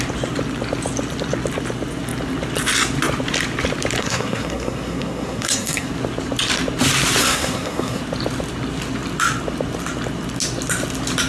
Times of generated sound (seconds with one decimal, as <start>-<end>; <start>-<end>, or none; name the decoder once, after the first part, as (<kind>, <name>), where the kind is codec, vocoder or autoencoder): 4.0-5.9 (codec, SNAC); 7.2-8.0

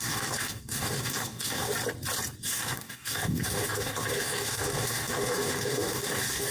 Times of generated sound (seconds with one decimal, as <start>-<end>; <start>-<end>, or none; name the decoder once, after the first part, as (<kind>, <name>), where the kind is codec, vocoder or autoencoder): 0.0-1.7 (codec, DAC); 2.4-6.5

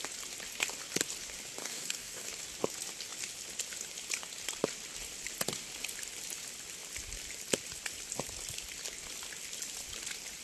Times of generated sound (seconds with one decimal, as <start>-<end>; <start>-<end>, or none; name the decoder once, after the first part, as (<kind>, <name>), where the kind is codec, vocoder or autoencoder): 1.6-2.3 (codec, DAC)

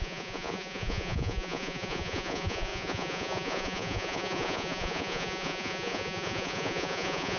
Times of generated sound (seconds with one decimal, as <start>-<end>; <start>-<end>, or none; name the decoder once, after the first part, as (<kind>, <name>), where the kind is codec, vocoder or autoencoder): 0.0-7.4 (vocoder, Vocos)

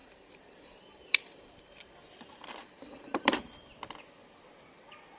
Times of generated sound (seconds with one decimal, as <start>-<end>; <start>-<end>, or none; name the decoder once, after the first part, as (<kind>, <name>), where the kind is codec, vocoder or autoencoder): 0.0-1.6 (vocoder, BigVGAN v2); 2.6-3.4

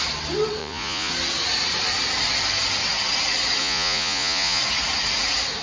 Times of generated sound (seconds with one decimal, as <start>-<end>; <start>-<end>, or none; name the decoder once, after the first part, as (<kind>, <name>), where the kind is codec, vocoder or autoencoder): 0.6-1.1 (vocoder, Vocos); 3.6-4.6